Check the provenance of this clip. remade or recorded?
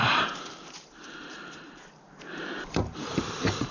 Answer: remade